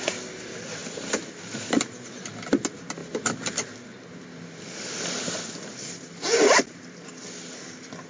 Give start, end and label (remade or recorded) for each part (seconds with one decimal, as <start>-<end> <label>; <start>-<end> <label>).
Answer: 0.0-8.1 recorded